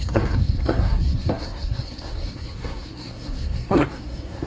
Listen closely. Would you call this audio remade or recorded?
remade